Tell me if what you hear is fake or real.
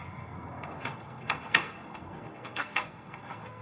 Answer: fake